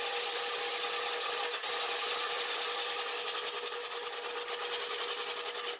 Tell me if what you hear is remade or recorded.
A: recorded